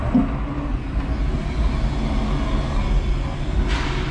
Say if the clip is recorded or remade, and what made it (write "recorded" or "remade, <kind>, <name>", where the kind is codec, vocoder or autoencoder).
recorded